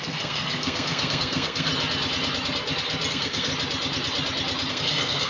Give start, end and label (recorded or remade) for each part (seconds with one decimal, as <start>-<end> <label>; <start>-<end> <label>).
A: 0.0-1.7 remade; 1.7-3.1 recorded; 3.1-3.5 remade; 3.5-4.7 recorded; 4.7-5.3 remade